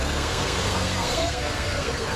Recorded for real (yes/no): no